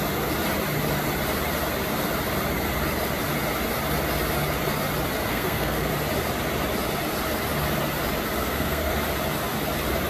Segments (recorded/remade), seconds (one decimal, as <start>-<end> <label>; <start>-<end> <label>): 0.0-5.3 recorded; 5.3-5.9 remade; 5.9-8.4 recorded; 8.4-8.9 remade; 8.9-10.1 recorded